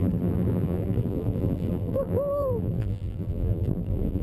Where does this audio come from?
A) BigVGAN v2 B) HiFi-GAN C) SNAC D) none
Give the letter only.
A